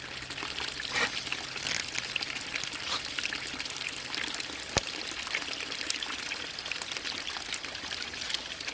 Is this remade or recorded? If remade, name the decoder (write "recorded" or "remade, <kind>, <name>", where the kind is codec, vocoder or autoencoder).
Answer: recorded